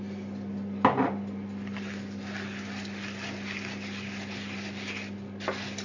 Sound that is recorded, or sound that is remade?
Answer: recorded